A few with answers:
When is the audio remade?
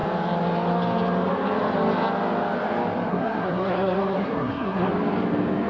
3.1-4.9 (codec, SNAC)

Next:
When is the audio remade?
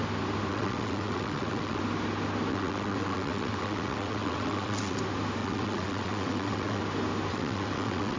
0.5-1.8 (vocoder, WaveNeXt); 2.5-5.0; 5.4-6.8; 7.3-8.2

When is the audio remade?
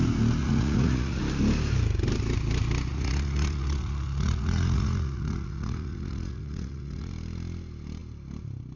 0.4-1.2 (vocoder, Vocos); 2.9-7.1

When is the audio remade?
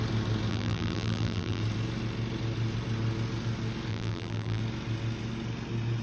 0.5-1.6 (vocoder, BigVGAN v2); 3.9-4.6